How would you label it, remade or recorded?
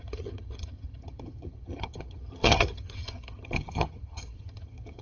remade